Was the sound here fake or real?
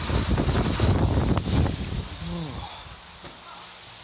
real